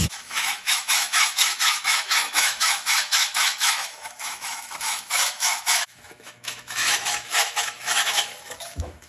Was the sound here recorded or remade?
remade